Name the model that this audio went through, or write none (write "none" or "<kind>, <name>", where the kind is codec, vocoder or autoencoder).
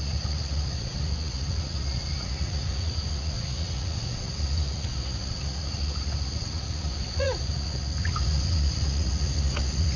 vocoder, Vocos